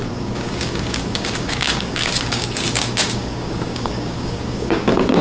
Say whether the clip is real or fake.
fake